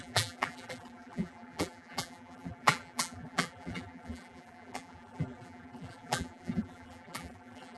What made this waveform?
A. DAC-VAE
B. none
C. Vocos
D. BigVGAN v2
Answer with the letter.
D